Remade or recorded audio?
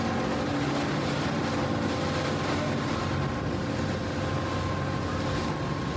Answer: recorded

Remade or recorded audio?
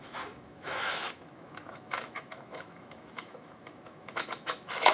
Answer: remade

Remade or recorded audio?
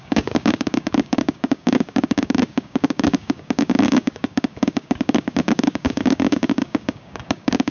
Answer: remade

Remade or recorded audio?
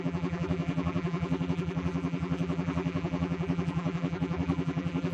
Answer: remade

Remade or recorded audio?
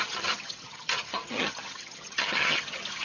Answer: remade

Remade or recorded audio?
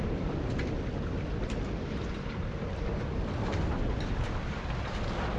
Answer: remade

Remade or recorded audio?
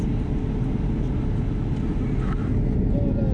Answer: recorded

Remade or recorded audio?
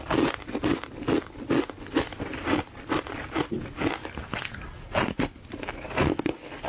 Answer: recorded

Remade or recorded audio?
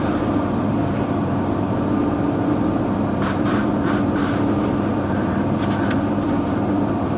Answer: remade